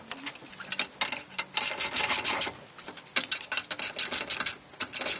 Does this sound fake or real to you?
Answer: real